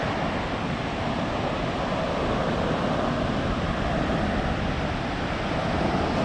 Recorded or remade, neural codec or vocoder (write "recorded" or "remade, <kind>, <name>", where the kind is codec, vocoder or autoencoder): recorded